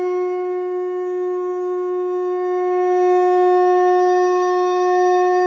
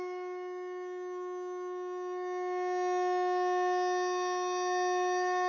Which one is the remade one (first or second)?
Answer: first